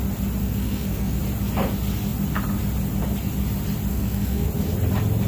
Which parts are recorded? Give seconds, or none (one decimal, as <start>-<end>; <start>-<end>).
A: 0.0-0.4; 1.2-3.9; 4.5-5.3